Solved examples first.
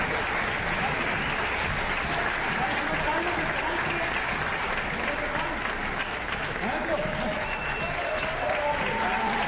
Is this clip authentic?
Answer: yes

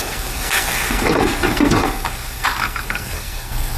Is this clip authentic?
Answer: no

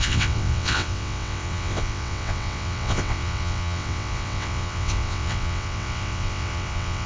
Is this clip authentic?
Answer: no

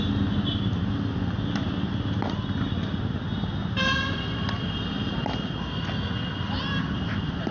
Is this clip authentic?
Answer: yes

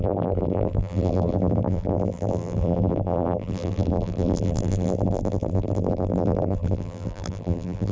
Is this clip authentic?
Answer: no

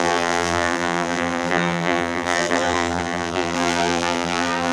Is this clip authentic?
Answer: no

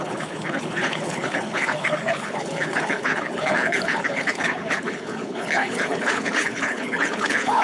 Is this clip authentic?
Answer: no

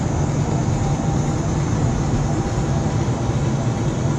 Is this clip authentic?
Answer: yes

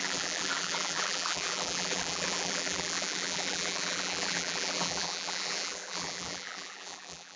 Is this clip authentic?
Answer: no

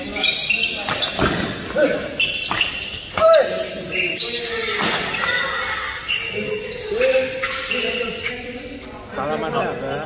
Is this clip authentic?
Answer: yes